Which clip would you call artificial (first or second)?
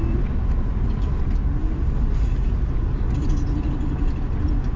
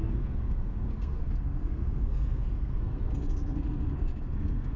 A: second